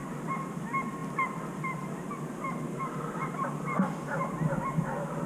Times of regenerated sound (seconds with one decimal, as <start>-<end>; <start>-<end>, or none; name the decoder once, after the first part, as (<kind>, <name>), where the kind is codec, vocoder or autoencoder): none